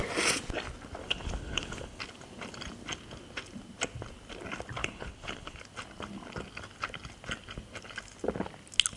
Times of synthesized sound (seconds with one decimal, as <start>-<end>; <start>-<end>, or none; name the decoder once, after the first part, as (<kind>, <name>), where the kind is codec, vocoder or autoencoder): 1.0-2.0 (codec, HILCodec); 4.8-5.6